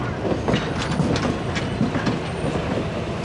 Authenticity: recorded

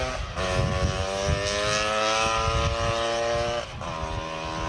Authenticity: recorded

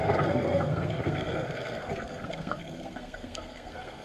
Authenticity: remade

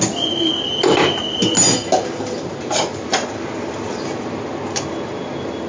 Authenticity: recorded